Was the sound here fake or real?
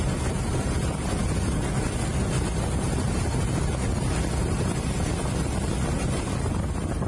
real